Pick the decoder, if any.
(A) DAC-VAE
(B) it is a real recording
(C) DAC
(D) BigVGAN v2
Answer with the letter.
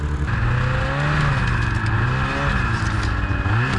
B